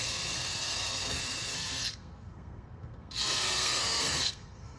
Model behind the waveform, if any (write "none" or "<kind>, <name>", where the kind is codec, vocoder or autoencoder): codec, SNAC